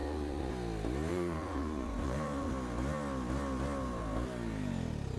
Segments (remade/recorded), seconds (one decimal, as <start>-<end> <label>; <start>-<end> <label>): 0.0-0.5 remade; 0.5-1.1 recorded; 1.1-2.5 remade; 2.5-5.2 recorded